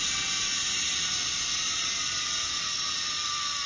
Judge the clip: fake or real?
real